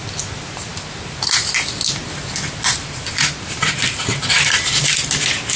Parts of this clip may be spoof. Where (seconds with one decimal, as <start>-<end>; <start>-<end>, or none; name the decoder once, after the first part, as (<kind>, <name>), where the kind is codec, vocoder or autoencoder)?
none